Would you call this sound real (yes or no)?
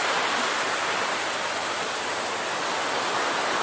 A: yes